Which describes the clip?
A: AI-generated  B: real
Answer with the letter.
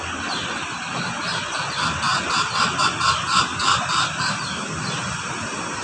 B